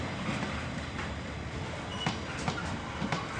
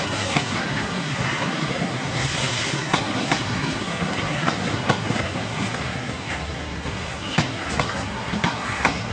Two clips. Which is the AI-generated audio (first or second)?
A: second